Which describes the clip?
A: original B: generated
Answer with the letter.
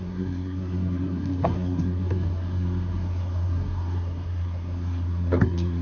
B